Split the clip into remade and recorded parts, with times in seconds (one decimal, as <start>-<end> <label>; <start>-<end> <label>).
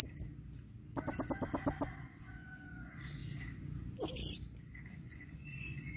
0.0-2.2 recorded; 2.2-3.2 remade; 3.2-4.7 recorded; 4.7-6.0 remade